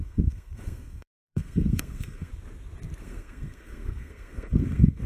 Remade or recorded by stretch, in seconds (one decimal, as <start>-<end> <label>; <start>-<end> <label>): 0.0-2.3 remade; 2.3-3.0 recorded; 3.0-5.1 remade

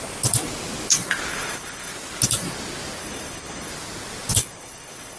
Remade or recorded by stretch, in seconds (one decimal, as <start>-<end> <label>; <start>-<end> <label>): 0.0-1.3 recorded; 1.3-1.9 remade; 1.9-3.0 recorded; 3.0-3.7 remade; 3.7-4.4 recorded; 4.4-5.2 remade

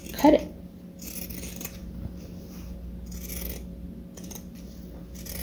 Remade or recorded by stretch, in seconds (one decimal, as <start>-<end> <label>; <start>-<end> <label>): 0.0-5.4 recorded

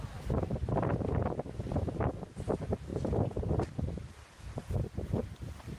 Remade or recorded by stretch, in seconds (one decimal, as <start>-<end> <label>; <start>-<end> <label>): 0.0-5.8 recorded